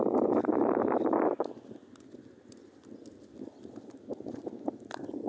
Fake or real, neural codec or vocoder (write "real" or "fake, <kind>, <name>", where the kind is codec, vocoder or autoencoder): real